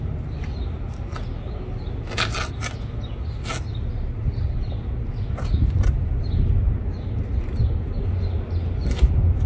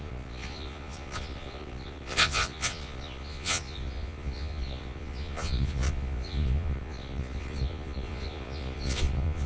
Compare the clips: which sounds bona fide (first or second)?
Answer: first